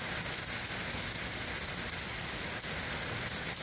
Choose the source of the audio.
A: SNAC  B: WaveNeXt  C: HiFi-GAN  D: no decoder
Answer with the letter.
D